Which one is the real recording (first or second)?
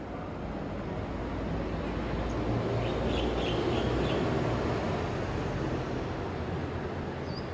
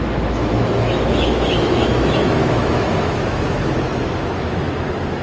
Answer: first